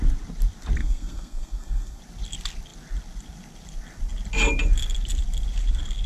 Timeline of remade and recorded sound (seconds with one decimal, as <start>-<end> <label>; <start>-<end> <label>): 0.0-0.8 recorded; 0.8-2.0 remade; 2.0-6.1 recorded